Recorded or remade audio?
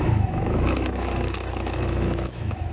remade